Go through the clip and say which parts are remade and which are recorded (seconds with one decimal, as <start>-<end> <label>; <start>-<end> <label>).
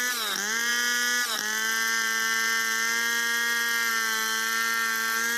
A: 0.0-5.4 recorded